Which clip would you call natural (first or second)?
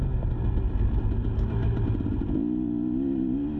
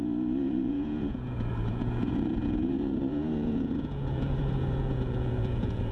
first